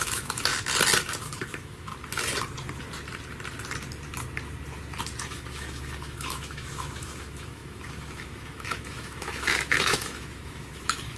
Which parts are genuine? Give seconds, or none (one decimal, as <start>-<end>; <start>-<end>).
0.5-1.2; 1.9-5.2